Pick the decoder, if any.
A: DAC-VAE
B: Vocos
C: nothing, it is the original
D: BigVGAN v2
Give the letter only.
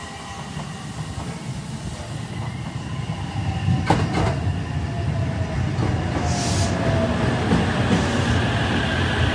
C